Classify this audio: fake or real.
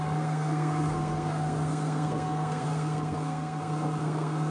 fake